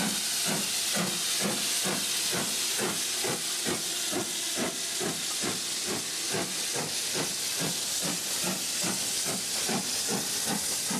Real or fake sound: real